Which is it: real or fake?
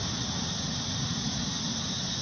real